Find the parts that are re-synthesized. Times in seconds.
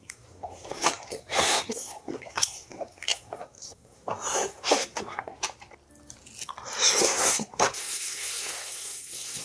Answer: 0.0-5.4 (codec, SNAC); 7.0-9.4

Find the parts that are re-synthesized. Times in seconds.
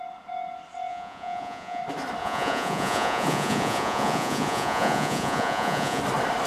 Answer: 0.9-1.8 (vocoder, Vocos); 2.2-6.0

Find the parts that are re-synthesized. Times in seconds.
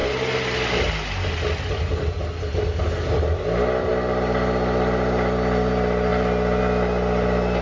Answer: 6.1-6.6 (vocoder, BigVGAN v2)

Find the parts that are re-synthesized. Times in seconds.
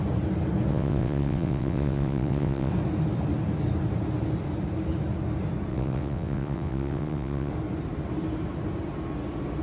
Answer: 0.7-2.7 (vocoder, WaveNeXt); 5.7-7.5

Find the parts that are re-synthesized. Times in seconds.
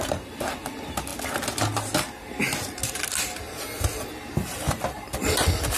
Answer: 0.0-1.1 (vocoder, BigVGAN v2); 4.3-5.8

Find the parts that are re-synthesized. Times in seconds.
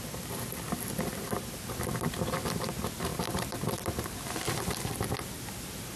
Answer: 1.1-1.9 (vocoder, BigVGAN v2); 3.1-5.4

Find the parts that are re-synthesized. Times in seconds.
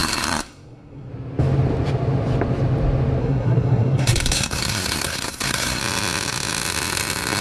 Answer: 0.0-1.1 (codec, SNAC); 3.2-5.8